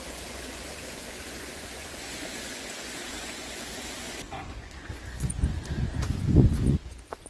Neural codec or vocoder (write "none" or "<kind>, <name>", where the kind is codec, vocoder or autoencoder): vocoder, Vocos